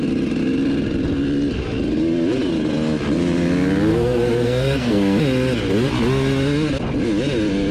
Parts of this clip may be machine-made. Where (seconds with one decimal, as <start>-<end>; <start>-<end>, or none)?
3.9-5.2